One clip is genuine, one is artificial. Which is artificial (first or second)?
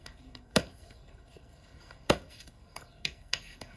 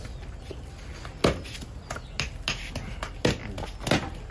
first